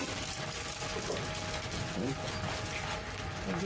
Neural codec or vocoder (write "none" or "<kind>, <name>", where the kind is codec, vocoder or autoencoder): none